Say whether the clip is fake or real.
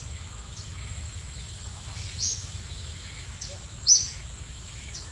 fake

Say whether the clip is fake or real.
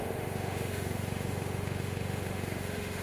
fake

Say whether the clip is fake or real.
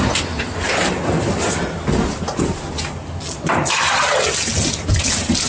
real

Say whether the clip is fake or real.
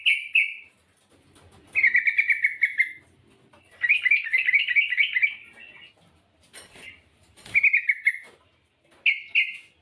real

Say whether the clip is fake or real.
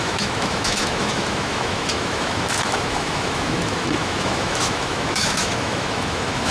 fake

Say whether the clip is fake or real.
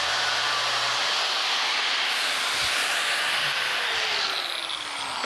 real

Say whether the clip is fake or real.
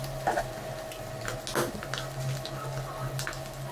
real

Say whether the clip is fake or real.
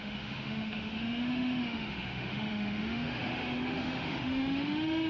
fake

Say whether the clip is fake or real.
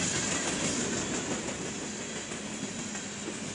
real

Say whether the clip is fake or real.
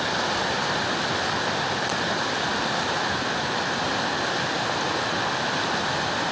real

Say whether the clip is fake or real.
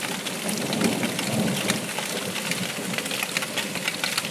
real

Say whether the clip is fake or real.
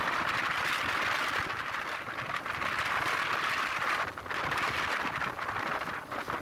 real